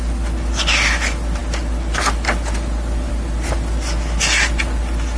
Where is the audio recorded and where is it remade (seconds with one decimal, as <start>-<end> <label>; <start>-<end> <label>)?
0.0-5.2 recorded